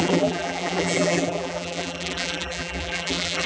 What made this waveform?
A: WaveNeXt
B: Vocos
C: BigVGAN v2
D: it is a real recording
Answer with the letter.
C